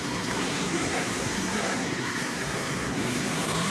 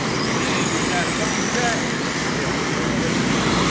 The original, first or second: second